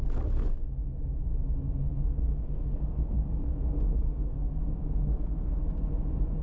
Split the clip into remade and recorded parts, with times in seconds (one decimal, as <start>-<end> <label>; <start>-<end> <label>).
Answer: 0.0-1.8 recorded; 1.8-5.6 remade; 5.6-6.4 recorded